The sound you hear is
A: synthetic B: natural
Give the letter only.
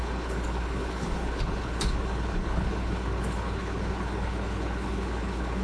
A